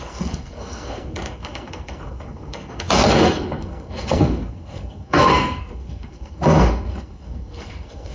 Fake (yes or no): yes